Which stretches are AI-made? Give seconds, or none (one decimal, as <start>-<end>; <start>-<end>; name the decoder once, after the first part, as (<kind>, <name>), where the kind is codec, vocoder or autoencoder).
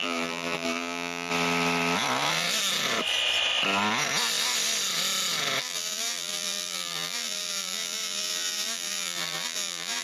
0.0-1.3 (vocoder, BigVGAN v2); 5.6-10.0